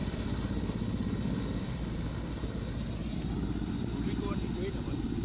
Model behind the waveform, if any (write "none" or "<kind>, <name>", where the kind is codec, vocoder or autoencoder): none